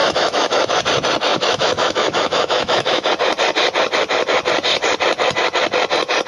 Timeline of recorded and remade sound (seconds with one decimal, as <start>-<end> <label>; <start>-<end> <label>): 0.0-0.8 remade; 0.8-1.3 recorded; 1.3-3.1 remade; 3.1-6.3 recorded